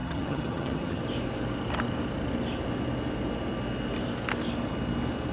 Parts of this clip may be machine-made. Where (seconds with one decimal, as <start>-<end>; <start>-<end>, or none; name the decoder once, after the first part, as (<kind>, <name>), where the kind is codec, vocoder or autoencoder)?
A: 0.0-1.0 (vocoder, HiFi-GAN)